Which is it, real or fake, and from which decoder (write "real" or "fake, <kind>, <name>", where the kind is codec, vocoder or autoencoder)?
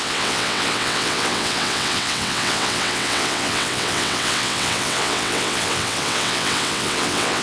fake, vocoder, WaveNeXt